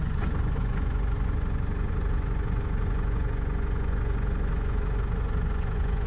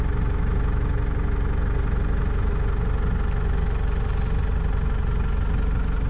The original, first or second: second